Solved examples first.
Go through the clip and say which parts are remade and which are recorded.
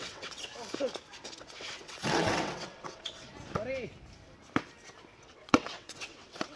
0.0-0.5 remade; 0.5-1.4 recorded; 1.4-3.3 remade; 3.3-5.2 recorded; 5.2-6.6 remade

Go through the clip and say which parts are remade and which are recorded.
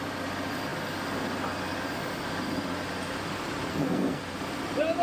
0.0-3.7 recorded; 3.7-4.2 remade; 4.2-5.0 recorded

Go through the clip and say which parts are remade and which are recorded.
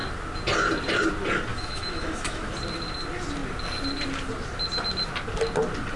0.0-1.5 recorded; 1.5-2.5 remade; 2.5-6.0 recorded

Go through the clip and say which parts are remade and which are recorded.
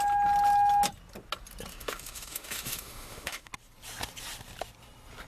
0.0-1.7 recorded; 1.7-3.5 remade; 3.5-5.3 recorded